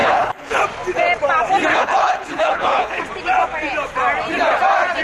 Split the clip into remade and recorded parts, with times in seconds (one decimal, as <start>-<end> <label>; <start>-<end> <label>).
0.0-0.6 remade; 0.6-1.7 recorded; 1.7-3.0 remade; 3.0-5.0 recorded